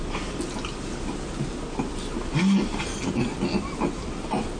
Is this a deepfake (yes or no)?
no